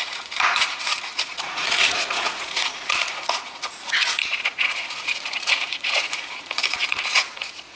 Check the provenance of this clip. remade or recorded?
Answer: remade